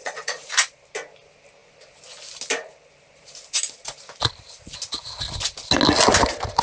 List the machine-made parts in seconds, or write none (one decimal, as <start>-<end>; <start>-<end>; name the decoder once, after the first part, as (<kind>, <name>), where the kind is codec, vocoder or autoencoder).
0.0-0.5 (vocoder, Vocos)